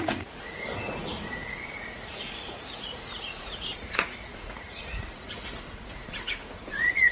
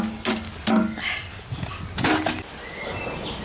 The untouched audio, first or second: second